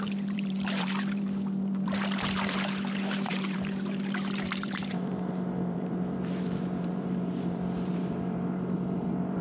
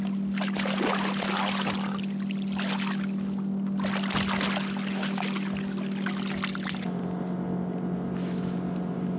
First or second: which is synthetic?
first